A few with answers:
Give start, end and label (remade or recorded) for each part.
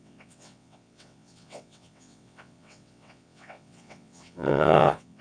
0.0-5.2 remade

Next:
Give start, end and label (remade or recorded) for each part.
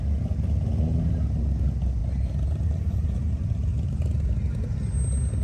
0.0-2.0 recorded; 2.0-3.3 remade; 3.3-3.7 recorded; 3.7-4.3 remade; 4.3-5.4 recorded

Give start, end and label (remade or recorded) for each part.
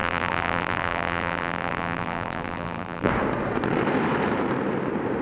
0.0-3.1 remade; 3.1-5.2 recorded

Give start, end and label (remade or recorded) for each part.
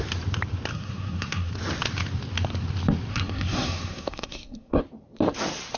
0.0-0.7 recorded; 0.7-1.5 remade; 1.5-3.1 recorded; 3.1-4.8 remade; 4.8-5.8 recorded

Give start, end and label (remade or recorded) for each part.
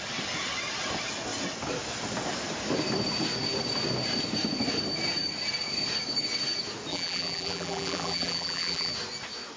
0.0-6.9 recorded; 6.9-8.9 remade; 8.9-9.6 recorded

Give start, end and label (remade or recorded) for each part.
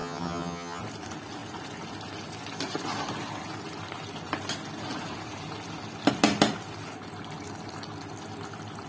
0.0-0.8 remade; 0.8-8.9 recorded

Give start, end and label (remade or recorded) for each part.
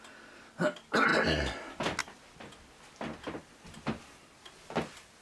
0.0-5.2 recorded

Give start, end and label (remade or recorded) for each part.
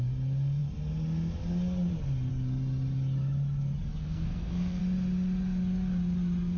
0.0-4.0 recorded; 4.0-4.8 remade; 4.8-6.6 recorded